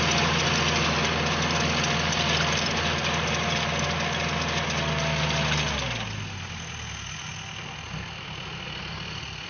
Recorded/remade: recorded